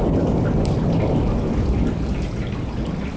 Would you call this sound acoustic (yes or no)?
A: yes